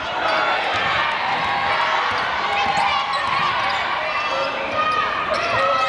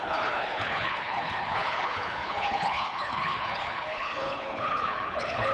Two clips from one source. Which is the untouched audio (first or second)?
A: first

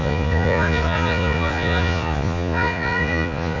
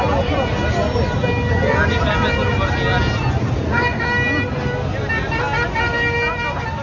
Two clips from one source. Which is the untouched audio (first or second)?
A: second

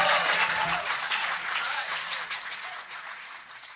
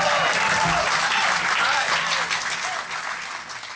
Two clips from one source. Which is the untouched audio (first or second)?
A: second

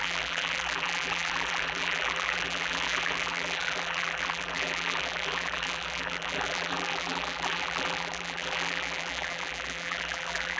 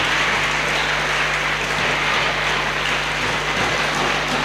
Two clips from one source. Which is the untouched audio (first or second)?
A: second